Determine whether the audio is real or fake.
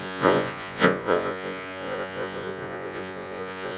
fake